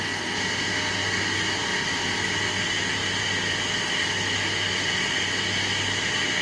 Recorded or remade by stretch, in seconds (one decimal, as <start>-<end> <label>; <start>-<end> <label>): 0.0-6.4 recorded